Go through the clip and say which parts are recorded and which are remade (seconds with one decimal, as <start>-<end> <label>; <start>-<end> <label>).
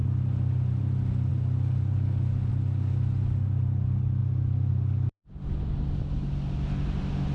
0.0-7.3 recorded